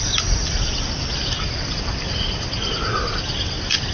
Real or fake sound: real